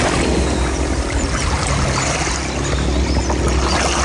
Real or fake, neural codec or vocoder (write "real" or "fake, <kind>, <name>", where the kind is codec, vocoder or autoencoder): real